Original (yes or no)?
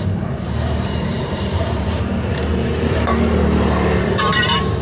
no